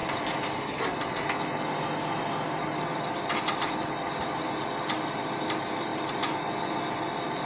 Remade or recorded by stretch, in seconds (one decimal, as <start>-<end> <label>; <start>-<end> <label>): 0.0-7.5 recorded